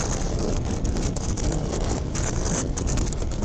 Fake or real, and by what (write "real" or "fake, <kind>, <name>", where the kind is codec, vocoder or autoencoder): fake, codec, SNAC